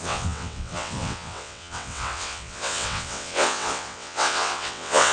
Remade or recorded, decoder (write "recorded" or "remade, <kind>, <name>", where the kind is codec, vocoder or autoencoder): remade, vocoder, WaveNeXt